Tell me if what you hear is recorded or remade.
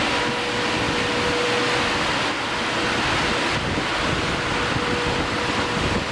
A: recorded